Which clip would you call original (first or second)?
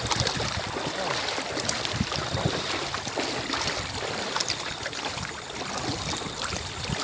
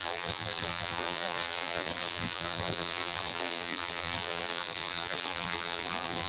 first